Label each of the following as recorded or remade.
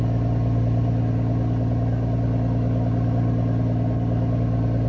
recorded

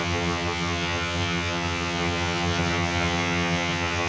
remade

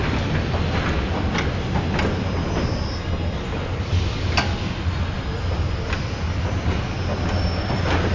recorded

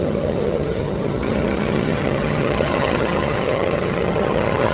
remade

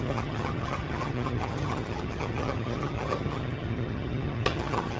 remade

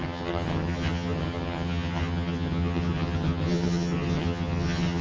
remade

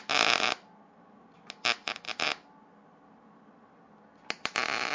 recorded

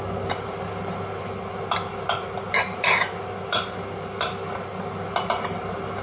recorded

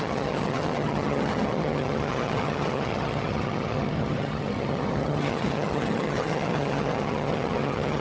remade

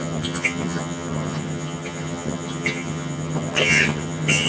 remade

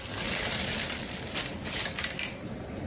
recorded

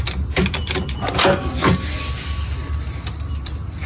recorded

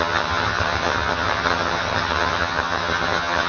remade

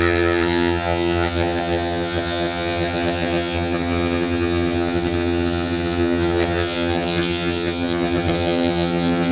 remade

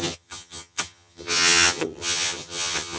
remade